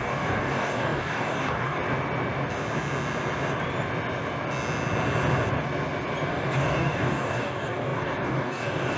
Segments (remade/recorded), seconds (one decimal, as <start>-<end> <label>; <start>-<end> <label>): 0.0-1.8 remade; 1.8-6.3 recorded; 6.3-9.0 remade